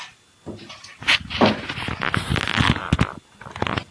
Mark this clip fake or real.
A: real